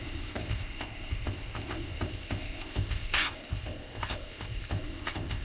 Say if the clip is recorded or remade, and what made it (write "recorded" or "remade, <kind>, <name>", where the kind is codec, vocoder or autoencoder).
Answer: remade, codec, ZipCodec